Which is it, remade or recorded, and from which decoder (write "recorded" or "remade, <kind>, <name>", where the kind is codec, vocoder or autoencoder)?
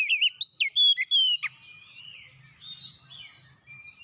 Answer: recorded